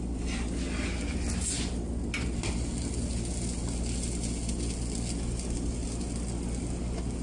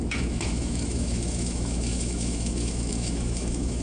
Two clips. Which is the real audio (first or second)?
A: first